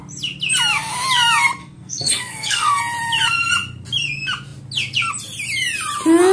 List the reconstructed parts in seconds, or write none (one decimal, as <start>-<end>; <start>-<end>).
1.6-2.8

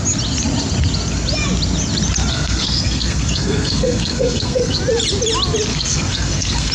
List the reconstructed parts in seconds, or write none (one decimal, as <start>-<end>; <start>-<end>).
2.3-4.8; 5.7-6.7

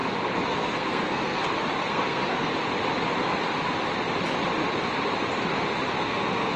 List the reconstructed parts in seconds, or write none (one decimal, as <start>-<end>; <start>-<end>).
0.5-1.4; 1.9-2.5; 6.0-6.6

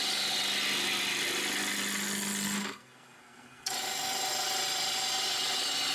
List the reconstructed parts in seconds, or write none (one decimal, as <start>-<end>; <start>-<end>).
2.6-3.7